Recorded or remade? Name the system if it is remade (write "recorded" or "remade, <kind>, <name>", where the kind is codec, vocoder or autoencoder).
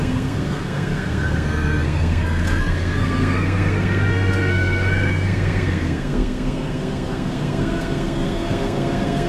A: remade, codec, SNAC